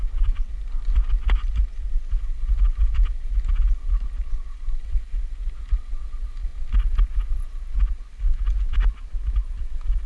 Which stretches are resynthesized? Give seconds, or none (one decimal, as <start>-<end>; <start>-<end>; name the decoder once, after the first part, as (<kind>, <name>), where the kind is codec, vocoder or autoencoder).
0.0-0.5 (vocoder, WaveNeXt)